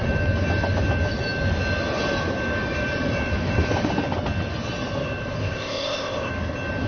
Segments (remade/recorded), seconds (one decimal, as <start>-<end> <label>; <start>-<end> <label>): 0.0-5.4 recorded; 5.4-6.3 remade; 6.3-6.9 recorded